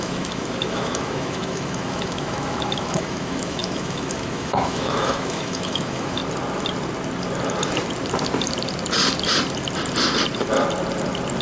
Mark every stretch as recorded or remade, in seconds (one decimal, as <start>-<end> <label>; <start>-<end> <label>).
0.0-6.2 remade; 6.2-11.4 recorded